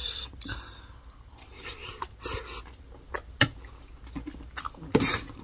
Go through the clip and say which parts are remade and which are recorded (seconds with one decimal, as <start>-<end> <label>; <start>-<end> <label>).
0.0-0.7 remade; 0.7-5.4 recorded